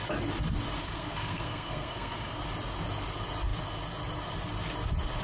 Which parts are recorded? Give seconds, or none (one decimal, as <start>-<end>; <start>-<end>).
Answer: 0.0-0.8; 2.4-5.2